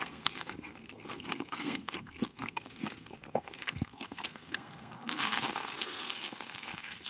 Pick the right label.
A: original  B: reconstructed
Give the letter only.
B